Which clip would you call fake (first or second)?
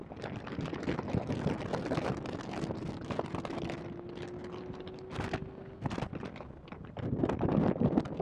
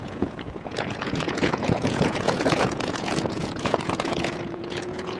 second